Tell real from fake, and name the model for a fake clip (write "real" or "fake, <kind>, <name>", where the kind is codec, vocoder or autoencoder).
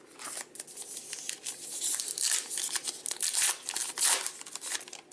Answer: real